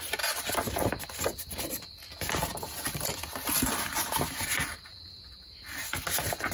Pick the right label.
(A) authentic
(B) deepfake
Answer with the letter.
A